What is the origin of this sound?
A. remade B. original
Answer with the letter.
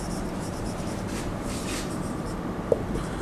A